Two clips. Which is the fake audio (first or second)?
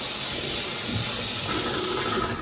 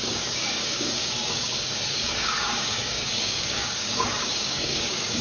second